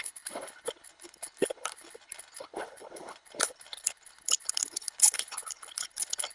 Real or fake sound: fake